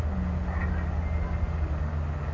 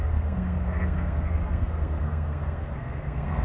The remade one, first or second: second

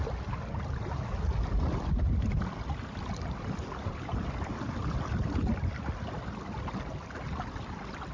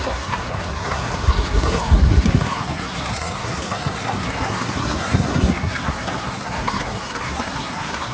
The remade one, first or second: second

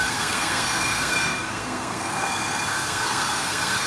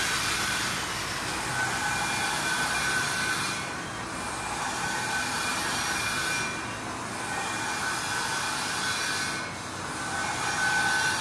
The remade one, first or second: first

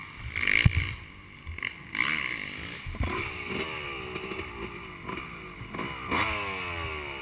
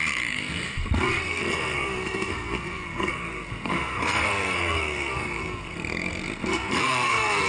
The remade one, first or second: second